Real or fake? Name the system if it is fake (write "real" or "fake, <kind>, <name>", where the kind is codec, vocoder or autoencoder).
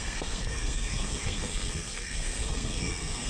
fake, codec, SNAC